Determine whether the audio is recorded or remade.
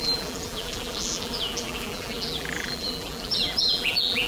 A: remade